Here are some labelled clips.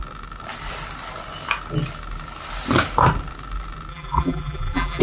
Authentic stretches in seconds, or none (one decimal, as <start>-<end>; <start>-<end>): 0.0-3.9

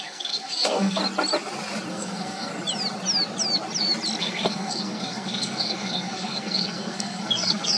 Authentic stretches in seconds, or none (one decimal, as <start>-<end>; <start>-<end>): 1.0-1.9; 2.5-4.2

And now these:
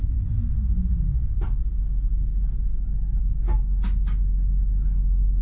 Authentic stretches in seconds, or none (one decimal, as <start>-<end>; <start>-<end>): 0.0-5.4

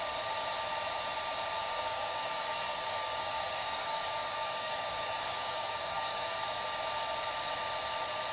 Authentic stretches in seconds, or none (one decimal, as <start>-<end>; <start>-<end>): 0.0-1.6; 6.6-8.3

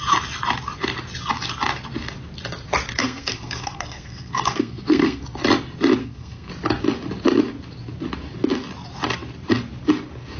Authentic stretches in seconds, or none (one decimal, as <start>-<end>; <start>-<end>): 0.0-3.0; 5.2-6.0; 6.5-10.4

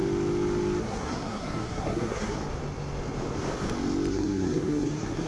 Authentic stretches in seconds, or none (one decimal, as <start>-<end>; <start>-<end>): 0.0-0.8; 2.4-4.1

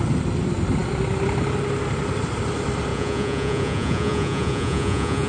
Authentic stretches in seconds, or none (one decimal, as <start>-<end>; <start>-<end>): 0.0-2.9